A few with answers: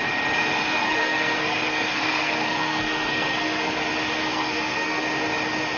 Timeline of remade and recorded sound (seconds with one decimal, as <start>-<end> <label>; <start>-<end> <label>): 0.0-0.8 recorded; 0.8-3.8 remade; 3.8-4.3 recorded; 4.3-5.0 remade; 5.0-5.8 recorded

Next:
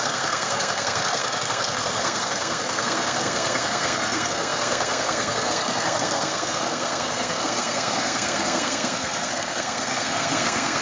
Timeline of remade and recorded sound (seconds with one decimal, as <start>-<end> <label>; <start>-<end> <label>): 0.0-10.8 remade

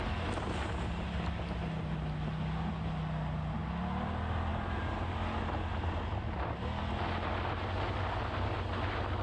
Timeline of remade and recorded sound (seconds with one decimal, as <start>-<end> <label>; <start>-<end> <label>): 0.0-9.2 recorded